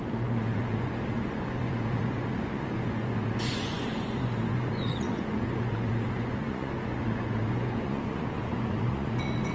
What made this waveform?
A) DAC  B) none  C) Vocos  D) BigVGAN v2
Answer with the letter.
C